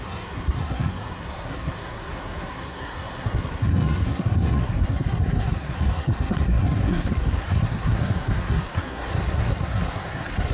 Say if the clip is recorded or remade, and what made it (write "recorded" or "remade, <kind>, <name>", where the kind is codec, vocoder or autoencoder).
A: remade, codec, SNAC